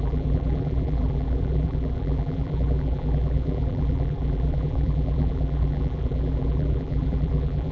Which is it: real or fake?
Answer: fake